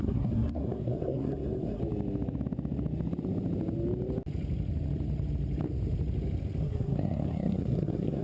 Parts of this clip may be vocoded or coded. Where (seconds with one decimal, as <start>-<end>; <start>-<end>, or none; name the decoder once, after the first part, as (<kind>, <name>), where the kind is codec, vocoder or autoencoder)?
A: 0.0-1.8 (codec, SNAC); 6.6-8.2